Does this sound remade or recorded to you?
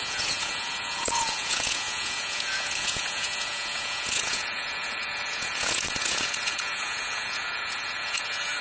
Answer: remade